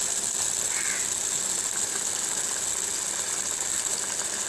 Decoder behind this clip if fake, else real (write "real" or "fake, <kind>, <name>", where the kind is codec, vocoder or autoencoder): real